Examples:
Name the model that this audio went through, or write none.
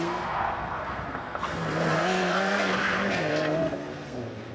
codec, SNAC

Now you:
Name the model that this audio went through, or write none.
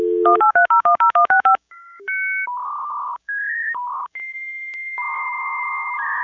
codec, DAC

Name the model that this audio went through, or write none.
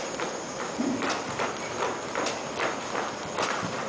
none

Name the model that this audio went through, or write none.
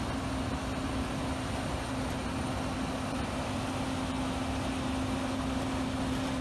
none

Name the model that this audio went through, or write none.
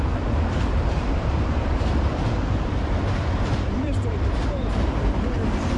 vocoder, BigVGAN v2